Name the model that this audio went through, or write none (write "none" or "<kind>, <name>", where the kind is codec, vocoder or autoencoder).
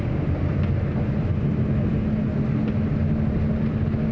none